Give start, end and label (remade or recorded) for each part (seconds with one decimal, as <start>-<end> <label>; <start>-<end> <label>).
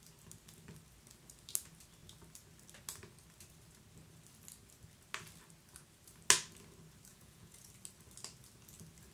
0.0-7.1 recorded; 7.1-7.7 remade; 7.7-9.1 recorded